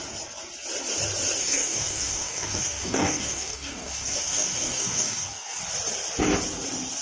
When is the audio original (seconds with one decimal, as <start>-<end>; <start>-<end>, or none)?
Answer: 0.0-1.4; 5.6-7.0